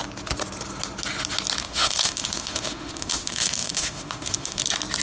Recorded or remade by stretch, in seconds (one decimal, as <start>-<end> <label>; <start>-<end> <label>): 0.0-1.6 recorded; 1.6-4.6 remade; 4.6-5.0 recorded